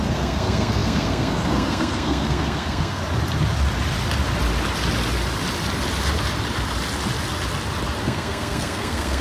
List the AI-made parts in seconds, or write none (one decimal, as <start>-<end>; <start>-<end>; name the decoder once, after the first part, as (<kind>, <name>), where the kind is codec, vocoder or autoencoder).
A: 0.0-3.0 (codec, SNAC); 8.0-9.2